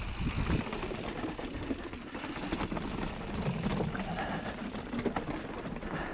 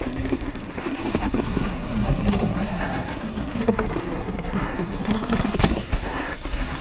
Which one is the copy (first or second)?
second